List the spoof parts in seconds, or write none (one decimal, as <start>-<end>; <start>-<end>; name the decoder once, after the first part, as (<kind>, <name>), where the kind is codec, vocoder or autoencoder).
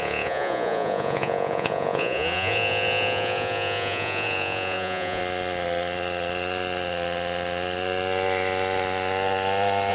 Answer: 0.0-5.2 (vocoder, Vocos)